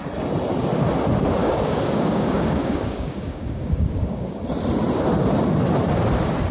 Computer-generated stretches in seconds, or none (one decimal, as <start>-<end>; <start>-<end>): 1.4-4.4